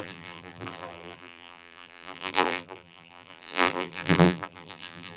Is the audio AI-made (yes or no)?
yes